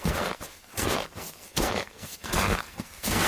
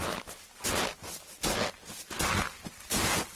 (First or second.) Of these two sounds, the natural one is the second